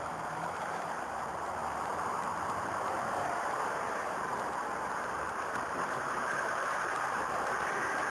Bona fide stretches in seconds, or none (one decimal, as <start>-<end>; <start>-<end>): none

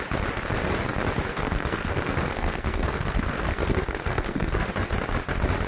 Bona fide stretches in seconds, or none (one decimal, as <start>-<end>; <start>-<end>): 0.0-1.3; 4.7-5.7